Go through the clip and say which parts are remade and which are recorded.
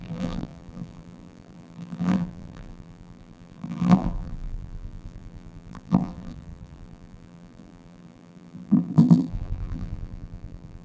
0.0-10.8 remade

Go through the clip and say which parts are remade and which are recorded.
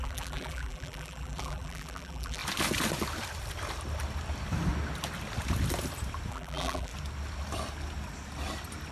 0.0-2.4 remade; 2.4-6.3 recorded; 6.3-6.9 remade; 6.9-8.9 recorded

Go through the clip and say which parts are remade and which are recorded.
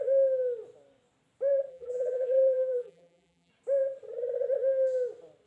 0.0-1.7 recorded; 1.7-3.5 remade; 3.5-5.5 recorded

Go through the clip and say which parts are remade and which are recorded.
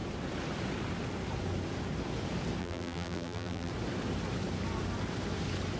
0.0-2.6 recorded; 2.6-3.7 remade; 3.7-5.8 recorded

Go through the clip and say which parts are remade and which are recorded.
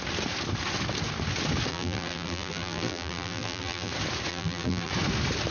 0.0-1.7 recorded; 1.7-3.9 remade; 3.9-4.3 recorded; 4.3-4.9 remade; 4.9-5.5 recorded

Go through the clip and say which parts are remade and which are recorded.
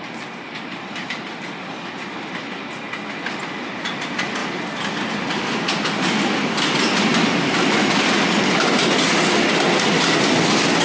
0.0-10.8 recorded